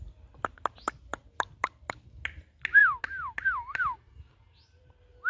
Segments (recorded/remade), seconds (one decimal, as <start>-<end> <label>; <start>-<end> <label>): 0.0-5.3 recorded